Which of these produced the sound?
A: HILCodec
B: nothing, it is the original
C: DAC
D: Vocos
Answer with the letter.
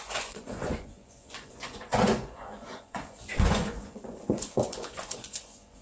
D